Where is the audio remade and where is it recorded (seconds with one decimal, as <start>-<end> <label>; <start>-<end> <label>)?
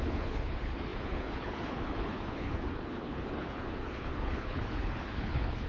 0.0-5.7 remade